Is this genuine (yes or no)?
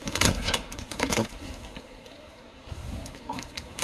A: no